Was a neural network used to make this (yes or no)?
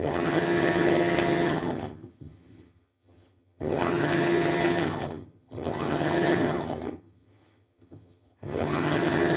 yes